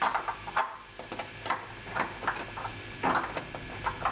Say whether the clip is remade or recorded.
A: recorded